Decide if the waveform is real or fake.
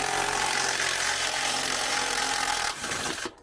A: fake